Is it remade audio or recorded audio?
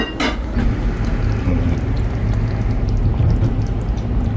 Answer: recorded